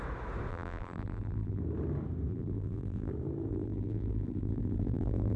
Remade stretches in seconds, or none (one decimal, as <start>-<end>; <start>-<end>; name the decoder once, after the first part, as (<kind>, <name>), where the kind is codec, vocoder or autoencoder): 0.5-1.6 (vocoder, BigVGAN v2); 2.3-3.1; 3.5-5.4